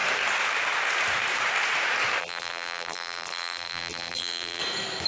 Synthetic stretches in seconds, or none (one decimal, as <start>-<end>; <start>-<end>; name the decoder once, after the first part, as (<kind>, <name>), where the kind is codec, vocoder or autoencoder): 2.2-4.6 (vocoder, BigVGAN v2)